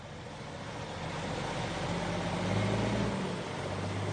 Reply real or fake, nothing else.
real